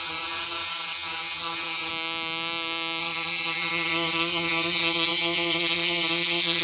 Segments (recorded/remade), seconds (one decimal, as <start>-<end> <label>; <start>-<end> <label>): 0.0-1.9 remade; 1.9-3.0 recorded; 3.0-6.6 remade